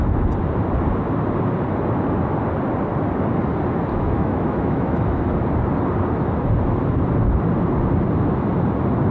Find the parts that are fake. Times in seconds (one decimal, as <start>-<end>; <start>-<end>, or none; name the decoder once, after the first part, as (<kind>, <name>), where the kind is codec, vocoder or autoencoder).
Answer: 3.9-5.2 (autoencoder, DAC-VAE)